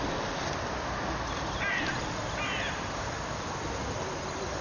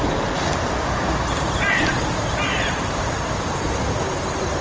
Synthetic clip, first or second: second